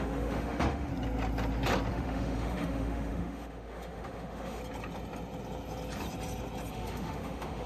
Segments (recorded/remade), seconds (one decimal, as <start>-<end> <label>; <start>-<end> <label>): 0.0-0.9 remade; 0.9-1.9 recorded; 1.9-4.6 remade; 4.6-6.7 recorded; 6.7-7.7 remade